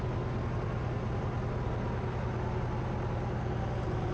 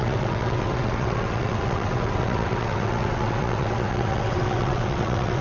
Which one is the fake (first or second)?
second